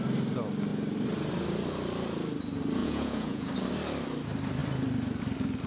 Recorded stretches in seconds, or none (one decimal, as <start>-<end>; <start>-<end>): 0.0-2.8; 3.5-5.7